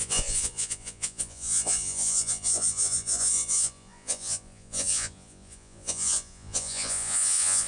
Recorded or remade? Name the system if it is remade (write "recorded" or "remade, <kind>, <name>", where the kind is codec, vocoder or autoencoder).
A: remade, vocoder, Vocos